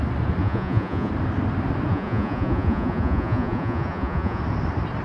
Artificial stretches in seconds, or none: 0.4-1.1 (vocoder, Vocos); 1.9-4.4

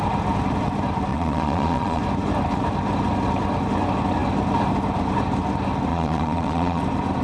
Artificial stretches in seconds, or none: 1.1-2.0 (vocoder, Vocos); 5.9-6.8